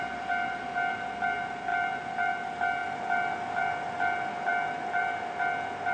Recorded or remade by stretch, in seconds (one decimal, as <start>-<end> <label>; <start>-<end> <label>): 0.0-5.9 recorded